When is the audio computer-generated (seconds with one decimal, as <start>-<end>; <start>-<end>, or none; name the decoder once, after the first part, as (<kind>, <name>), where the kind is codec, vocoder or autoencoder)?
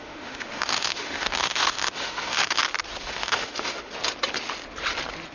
0.0-2.6 (autoencoder, DAC-VAE); 3.0-3.9